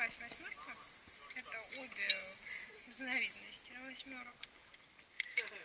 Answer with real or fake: real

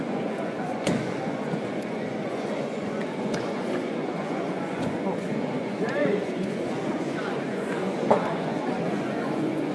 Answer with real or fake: fake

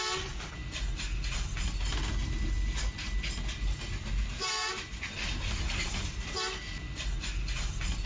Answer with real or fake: real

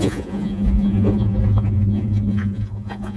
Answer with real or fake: fake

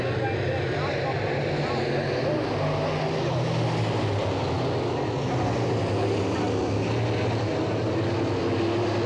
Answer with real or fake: real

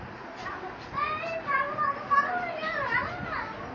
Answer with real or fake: real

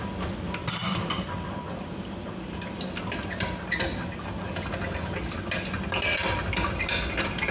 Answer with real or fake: real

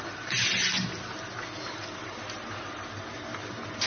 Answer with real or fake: real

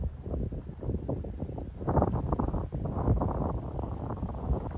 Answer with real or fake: real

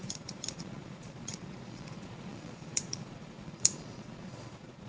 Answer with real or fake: fake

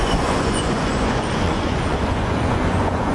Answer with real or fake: fake